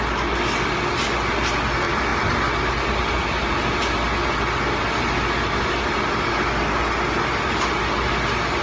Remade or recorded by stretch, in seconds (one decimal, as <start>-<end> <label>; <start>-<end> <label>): 0.0-8.6 recorded